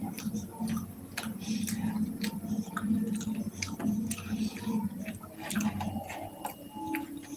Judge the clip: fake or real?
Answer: real